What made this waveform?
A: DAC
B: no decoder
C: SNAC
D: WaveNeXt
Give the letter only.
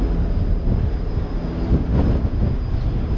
B